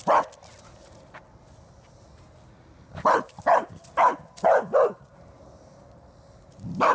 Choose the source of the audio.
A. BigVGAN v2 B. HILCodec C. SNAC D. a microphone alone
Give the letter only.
D